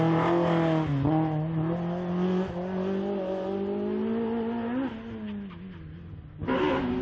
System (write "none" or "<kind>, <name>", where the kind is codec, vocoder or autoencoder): none